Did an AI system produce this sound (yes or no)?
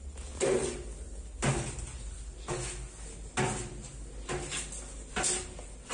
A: no